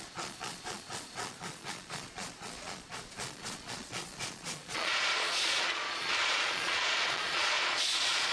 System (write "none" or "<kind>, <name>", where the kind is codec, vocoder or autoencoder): vocoder, Vocos